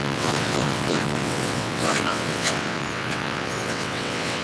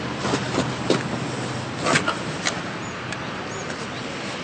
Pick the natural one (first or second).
second